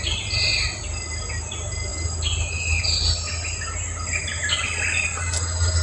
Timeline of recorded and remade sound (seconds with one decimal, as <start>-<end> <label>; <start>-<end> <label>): 0.0-5.8 recorded